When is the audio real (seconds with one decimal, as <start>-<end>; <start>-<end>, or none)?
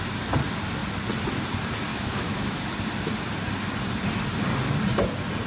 0.0-1.9; 2.6-5.5